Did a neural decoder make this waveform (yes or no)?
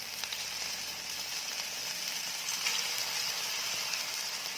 no